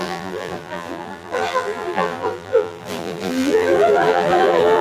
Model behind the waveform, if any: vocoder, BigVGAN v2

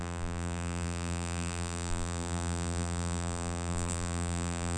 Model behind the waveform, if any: vocoder, BigVGAN v2